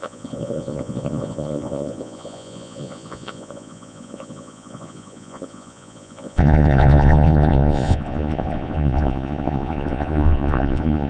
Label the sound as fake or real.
fake